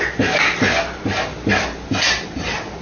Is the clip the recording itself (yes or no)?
yes